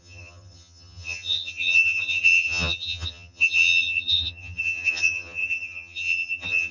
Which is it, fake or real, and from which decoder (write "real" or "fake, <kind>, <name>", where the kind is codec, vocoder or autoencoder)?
fake, vocoder, HiFi-GAN